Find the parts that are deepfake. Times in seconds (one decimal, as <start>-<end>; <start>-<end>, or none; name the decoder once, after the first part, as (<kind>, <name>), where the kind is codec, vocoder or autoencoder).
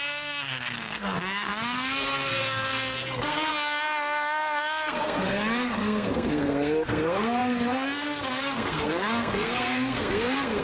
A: 0.0-10.6 (codec, SNAC)